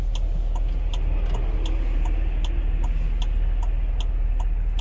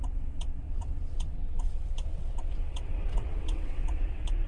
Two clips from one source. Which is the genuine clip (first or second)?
first